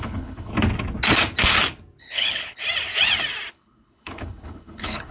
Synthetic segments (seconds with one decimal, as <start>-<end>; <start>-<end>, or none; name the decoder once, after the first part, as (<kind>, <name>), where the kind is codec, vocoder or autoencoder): 0.0-0.5 (codec, HILCodec); 2.0-2.6; 3.5-5.1